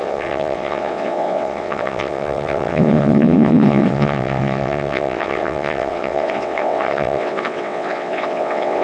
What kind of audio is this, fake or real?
fake